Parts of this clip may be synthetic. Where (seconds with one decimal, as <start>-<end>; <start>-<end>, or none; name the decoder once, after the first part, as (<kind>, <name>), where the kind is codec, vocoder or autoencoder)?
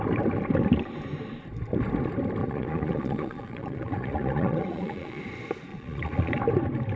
2.4-5.2 (vocoder, Vocos); 5.7-6.4